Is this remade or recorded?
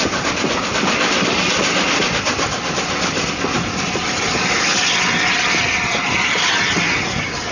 recorded